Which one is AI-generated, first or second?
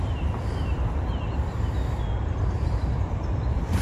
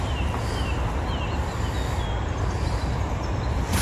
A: first